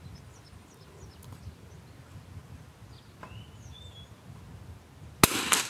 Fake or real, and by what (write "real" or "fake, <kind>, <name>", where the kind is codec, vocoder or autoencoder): real